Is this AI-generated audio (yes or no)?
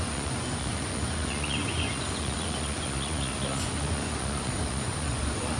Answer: yes